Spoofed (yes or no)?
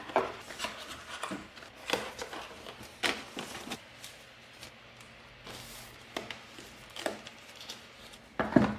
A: no